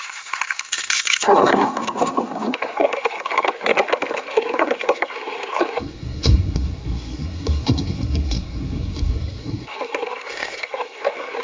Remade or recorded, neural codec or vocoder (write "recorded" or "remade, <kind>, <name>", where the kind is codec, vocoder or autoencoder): remade, codec, SNAC